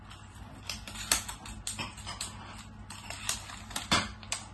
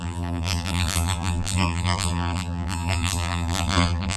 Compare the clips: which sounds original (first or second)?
first